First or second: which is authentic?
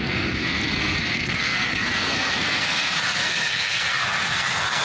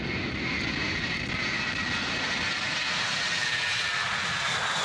second